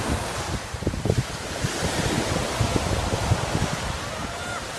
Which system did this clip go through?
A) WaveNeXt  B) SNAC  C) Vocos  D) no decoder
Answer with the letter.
D